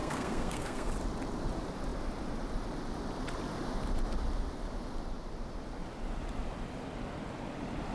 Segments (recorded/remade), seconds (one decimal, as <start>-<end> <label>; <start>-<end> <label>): 0.0-0.9 remade; 0.9-7.9 recorded